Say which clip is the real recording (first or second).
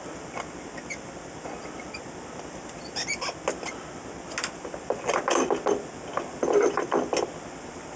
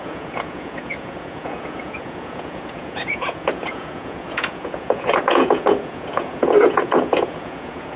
first